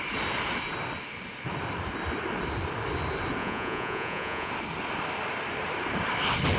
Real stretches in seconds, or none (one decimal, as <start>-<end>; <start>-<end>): 0.0-3.4; 4.5-6.6